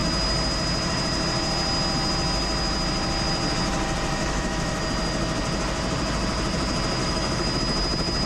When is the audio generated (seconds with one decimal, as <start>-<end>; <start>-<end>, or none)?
4.2-4.8; 7.0-7.6